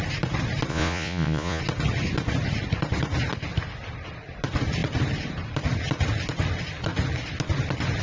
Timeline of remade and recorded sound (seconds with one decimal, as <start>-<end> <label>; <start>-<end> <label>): 0.0-0.7 recorded; 0.7-1.6 remade; 1.6-8.0 recorded